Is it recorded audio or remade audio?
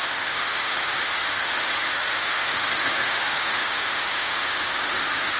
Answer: remade